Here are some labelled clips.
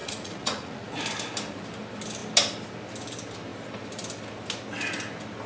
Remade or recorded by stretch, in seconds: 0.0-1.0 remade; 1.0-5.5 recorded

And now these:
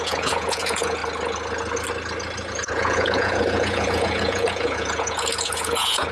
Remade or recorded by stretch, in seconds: 0.0-1.0 remade; 1.0-2.5 recorded; 2.5-6.1 remade

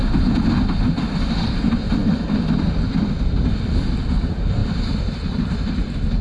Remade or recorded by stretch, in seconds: 0.0-6.2 recorded